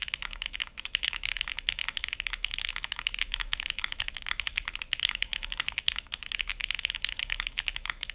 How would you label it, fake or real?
fake